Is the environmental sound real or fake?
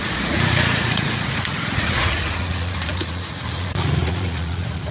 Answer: fake